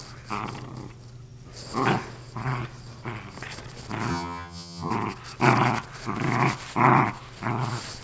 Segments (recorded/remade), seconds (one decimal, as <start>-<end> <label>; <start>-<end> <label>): 0.0-4.1 recorded; 4.1-4.9 remade; 4.9-8.0 recorded